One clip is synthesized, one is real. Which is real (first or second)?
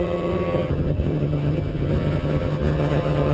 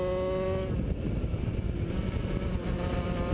second